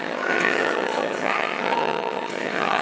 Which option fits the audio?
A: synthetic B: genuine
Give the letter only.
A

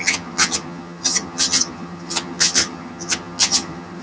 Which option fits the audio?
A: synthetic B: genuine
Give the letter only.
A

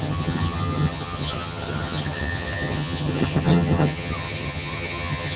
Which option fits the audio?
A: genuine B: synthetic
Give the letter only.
B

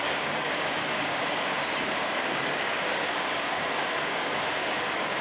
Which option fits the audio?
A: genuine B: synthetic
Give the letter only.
B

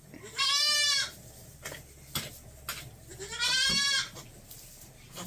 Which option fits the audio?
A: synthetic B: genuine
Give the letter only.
B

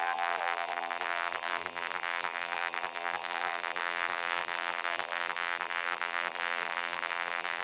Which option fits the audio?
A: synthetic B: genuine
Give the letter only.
A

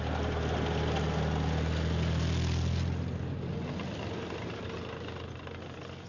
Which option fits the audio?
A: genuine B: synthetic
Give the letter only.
A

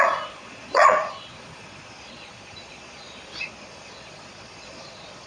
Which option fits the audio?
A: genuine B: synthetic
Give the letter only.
B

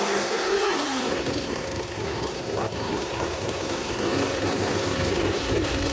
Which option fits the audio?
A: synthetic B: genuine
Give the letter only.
A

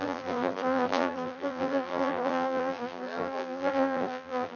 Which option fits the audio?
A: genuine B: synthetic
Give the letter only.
B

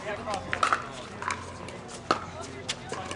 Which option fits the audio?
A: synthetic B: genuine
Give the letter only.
B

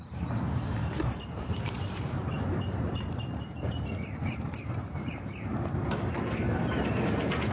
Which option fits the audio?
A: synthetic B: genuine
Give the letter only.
A